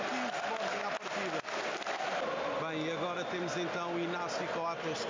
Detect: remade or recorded recorded